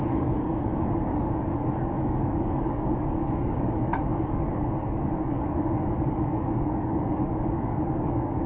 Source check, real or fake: fake